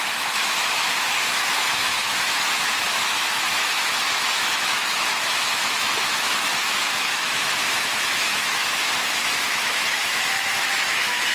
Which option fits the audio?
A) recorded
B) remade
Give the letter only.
B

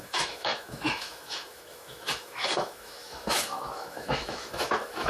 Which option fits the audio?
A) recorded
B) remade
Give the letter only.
B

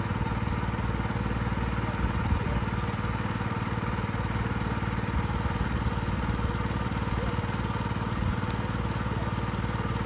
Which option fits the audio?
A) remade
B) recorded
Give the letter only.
B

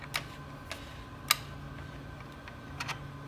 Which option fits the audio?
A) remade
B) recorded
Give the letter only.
B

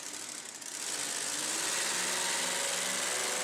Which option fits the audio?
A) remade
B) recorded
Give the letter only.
B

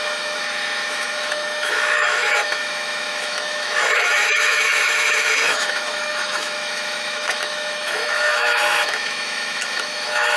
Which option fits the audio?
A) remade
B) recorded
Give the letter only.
A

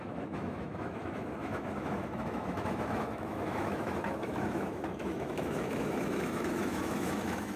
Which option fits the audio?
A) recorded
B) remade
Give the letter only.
B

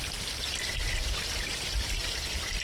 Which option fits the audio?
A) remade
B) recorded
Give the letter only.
B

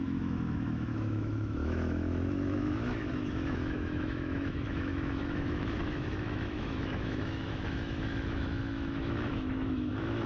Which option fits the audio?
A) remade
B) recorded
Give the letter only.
A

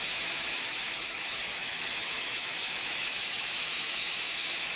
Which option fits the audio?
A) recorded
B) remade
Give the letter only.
B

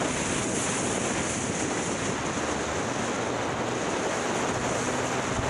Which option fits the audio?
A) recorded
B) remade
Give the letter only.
A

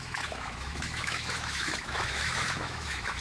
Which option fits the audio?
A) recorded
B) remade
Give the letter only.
B